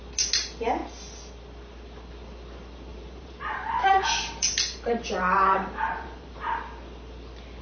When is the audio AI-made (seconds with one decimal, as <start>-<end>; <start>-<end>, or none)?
2.9-6.5